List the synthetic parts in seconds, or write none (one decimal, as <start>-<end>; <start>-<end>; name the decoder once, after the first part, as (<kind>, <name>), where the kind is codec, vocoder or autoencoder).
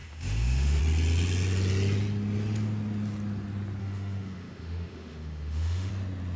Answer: 0.0-0.8 (autoencoder, DAC-VAE); 3.8-5.9